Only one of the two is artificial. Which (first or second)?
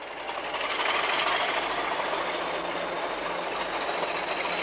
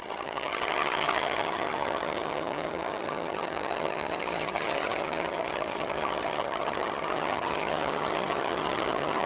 second